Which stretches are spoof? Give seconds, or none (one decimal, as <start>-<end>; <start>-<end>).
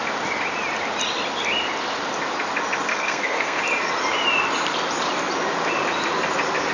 2.9-3.6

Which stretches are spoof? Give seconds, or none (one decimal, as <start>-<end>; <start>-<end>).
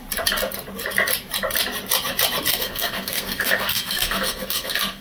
2.5-5.0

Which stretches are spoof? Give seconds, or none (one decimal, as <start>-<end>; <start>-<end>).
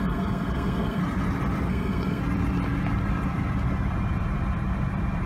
0.0-1.0; 1.7-2.2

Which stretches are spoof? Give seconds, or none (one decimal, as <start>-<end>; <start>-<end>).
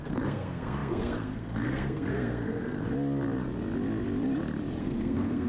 0.0-2.9; 4.8-5.5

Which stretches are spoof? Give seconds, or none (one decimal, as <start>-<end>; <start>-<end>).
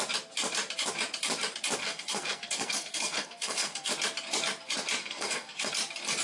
1.8-3.9; 5.0-5.7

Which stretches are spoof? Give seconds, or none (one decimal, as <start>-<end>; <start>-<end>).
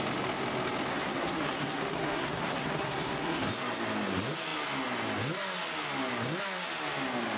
0.9-3.5